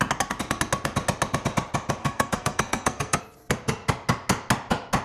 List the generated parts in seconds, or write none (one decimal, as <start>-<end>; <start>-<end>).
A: 2.0-3.2

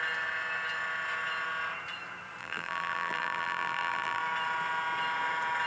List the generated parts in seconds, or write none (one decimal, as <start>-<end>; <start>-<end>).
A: 2.4-4.2

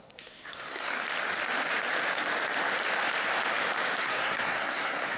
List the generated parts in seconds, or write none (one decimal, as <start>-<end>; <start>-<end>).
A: 0.0-0.9; 4.0-5.2

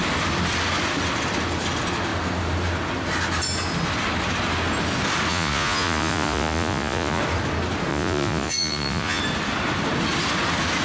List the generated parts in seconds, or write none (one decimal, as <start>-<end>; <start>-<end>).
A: 5.3-7.2; 7.9-9.2

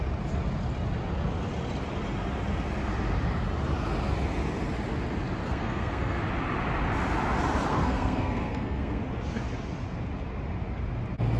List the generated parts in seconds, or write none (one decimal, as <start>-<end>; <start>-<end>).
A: 5.4-6.2; 7.7-9.0